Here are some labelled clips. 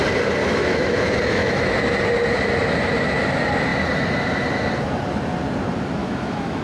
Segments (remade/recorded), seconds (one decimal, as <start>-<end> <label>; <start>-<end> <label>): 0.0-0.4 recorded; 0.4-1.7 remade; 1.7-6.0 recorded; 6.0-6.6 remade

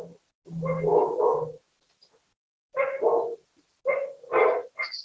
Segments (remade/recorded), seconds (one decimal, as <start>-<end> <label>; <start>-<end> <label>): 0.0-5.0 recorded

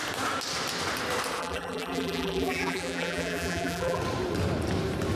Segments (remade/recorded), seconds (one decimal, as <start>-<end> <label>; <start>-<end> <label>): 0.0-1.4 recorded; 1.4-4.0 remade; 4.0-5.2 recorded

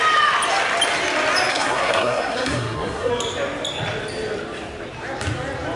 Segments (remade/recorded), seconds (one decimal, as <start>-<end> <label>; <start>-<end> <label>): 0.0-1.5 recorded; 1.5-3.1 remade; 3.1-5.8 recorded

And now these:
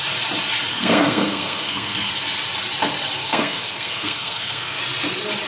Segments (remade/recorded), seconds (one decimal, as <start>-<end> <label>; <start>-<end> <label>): 0.0-0.7 recorded; 0.7-2.1 remade; 2.1-3.2 recorded; 3.2-4.8 remade; 4.8-5.5 recorded

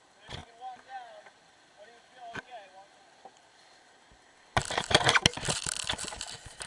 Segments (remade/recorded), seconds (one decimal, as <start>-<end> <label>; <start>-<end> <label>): 0.0-0.4 recorded; 0.4-3.9 remade; 3.9-5.3 recorded; 5.3-6.7 remade

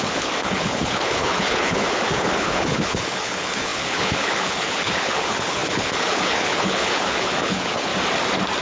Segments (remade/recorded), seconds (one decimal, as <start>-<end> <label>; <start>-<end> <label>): 0.0-7.9 remade; 7.9-8.6 recorded

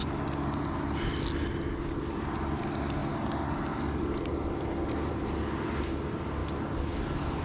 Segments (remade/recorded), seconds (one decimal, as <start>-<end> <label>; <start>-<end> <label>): 0.0-7.4 recorded